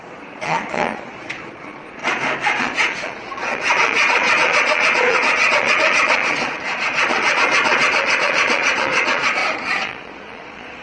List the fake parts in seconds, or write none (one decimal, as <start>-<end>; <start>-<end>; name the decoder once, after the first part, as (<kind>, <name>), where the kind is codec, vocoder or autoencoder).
0.0-2.0 (vocoder, Vocos); 2.6-10.8

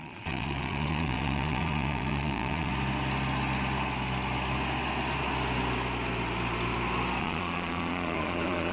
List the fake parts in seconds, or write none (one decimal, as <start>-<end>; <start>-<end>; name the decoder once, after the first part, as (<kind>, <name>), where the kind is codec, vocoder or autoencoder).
0.0-2.7 (vocoder, Vocos); 7.2-8.7

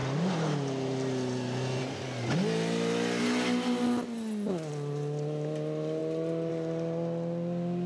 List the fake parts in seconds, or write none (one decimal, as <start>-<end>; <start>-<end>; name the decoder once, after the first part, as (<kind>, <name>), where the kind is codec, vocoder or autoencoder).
none